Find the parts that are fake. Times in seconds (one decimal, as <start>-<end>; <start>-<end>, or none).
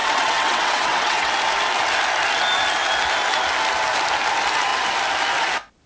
0.0-1.3